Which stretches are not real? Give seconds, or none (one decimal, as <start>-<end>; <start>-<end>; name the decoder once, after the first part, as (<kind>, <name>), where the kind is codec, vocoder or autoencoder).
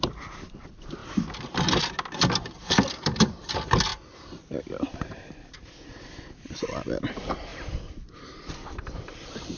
0.0-1.0 (vocoder, BigVGAN v2); 1.8-9.6